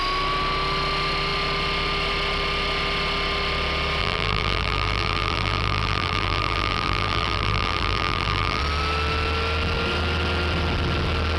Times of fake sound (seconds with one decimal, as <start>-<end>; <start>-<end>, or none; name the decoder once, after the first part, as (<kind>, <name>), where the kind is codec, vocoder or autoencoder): 4.0-8.6 (vocoder, BigVGAN v2)